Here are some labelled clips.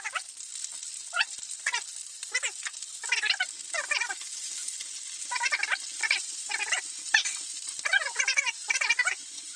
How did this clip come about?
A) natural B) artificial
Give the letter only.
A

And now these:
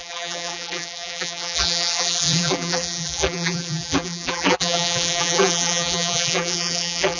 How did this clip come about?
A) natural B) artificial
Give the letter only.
B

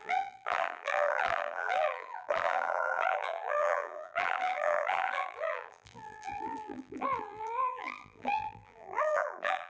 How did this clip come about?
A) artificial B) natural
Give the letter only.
A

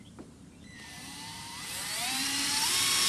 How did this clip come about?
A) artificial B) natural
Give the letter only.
A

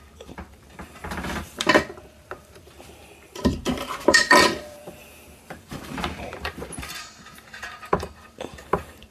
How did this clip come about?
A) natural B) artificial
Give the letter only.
B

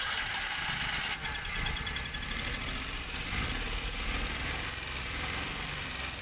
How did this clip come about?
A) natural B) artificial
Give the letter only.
B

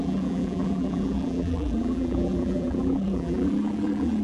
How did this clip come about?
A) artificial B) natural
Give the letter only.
A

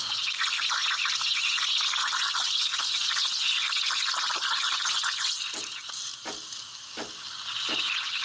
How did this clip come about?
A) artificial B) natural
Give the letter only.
B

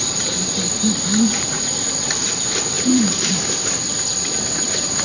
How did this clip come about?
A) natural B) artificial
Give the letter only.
B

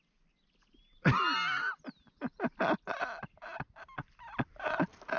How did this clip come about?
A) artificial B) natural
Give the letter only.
B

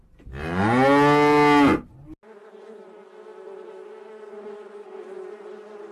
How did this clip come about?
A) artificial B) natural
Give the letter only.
B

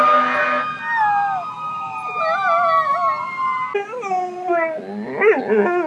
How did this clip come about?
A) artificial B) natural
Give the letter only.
B